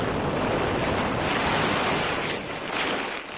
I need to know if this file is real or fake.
real